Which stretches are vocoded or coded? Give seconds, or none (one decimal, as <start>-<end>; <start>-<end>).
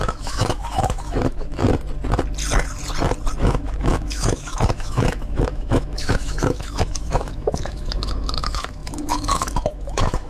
0.0-1.6; 3.4-10.3